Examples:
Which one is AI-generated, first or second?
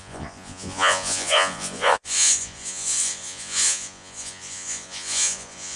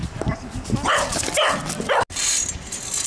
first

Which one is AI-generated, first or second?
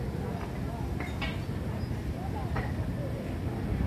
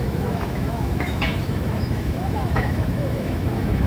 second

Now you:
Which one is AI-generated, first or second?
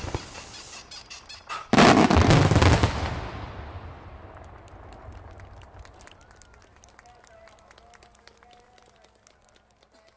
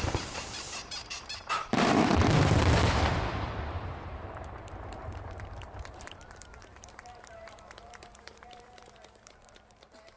second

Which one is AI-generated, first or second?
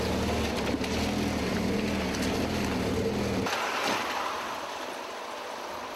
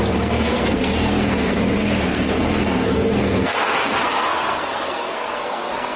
second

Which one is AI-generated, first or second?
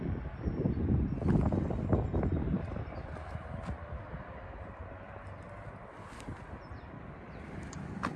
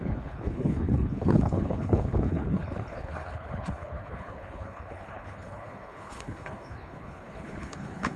second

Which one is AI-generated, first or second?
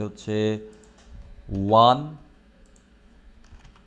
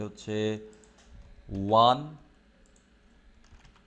first